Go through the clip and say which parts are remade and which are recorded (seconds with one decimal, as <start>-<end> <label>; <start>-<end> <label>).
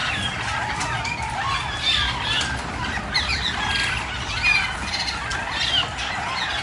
0.0-3.6 remade; 3.6-5.3 recorded; 5.3-6.1 remade; 6.1-6.6 recorded